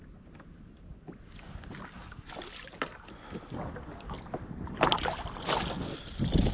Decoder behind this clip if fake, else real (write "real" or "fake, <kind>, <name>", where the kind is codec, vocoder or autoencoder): real